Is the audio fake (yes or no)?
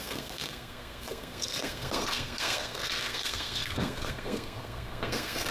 yes